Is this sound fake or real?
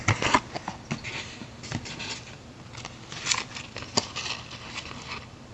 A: real